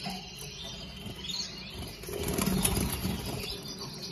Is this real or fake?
real